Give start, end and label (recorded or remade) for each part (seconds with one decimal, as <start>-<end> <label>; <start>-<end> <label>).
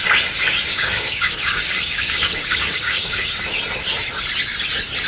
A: 0.0-0.7 recorded; 0.7-3.4 remade; 3.4-5.1 recorded